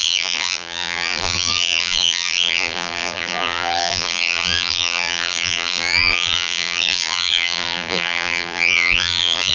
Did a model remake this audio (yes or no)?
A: yes